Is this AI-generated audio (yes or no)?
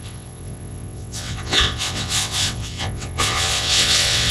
yes